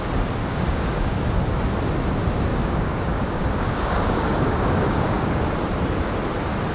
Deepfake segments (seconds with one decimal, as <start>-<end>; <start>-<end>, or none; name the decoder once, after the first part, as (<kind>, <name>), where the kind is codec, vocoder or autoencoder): 0.4-1.2 (codec, DAC); 2.5-5.4